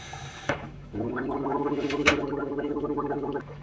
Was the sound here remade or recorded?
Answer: remade